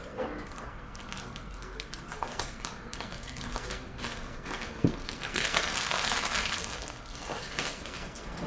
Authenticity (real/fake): fake